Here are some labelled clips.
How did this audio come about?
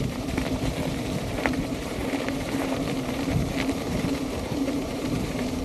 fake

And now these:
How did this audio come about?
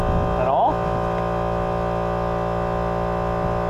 real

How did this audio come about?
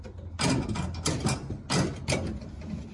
real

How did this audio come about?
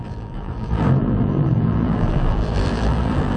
fake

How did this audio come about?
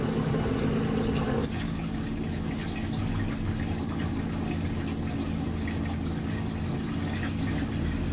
real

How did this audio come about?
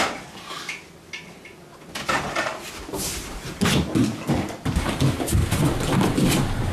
real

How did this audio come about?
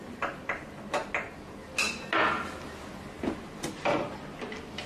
real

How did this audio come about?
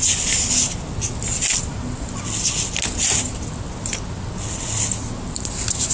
real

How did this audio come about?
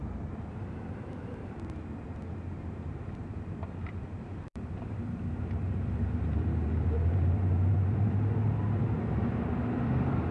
fake